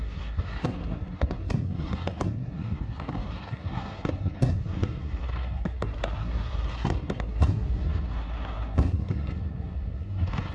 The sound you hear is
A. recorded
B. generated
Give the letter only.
B